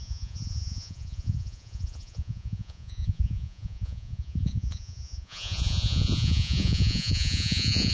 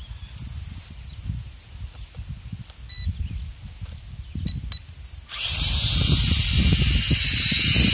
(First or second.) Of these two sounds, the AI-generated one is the first